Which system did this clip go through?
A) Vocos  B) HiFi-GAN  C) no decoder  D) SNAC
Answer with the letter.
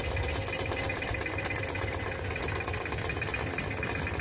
C